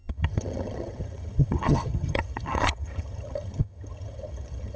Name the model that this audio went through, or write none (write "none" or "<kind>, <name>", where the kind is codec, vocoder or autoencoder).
vocoder, HiFi-GAN